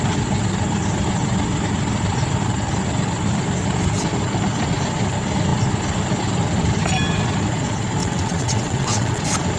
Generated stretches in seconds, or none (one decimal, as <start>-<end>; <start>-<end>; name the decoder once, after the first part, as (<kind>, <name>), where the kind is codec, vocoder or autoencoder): 8.0-9.2 (vocoder, WaveNeXt)